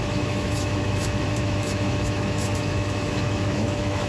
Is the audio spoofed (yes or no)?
yes